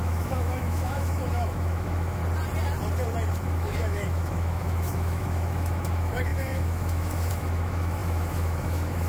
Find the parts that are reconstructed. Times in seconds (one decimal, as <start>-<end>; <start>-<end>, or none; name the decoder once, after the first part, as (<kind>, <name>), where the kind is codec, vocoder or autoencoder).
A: 0.0-2.2 (autoencoder, DAC-VAE); 3.3-9.1